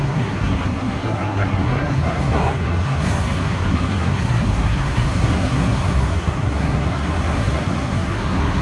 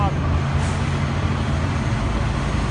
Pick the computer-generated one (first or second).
first